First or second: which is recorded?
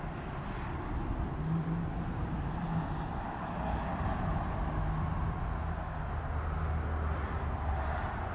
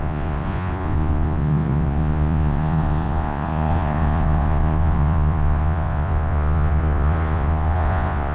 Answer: first